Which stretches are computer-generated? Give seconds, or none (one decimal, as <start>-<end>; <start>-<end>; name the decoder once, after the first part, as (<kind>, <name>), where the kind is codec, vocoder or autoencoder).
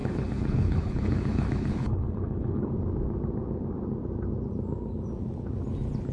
0.0-2.7 (codec, HILCodec)